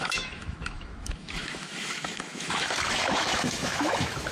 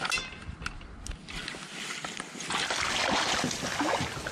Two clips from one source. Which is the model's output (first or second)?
first